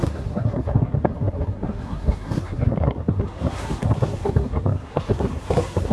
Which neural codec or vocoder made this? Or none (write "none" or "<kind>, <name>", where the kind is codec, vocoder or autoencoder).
codec, SNAC